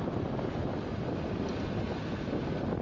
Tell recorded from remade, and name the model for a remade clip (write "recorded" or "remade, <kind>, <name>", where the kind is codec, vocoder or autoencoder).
recorded